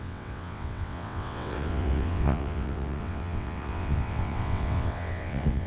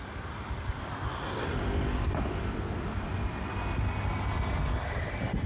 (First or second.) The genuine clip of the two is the second